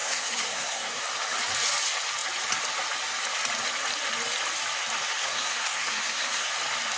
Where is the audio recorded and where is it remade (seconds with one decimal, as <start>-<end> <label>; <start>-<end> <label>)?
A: 0.0-1.0 remade; 1.0-5.2 recorded; 5.2-6.5 remade; 6.5-7.0 recorded